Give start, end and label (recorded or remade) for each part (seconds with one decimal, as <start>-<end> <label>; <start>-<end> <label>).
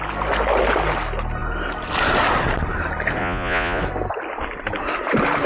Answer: 0.0-3.2 recorded; 3.2-3.8 remade; 3.8-5.5 recorded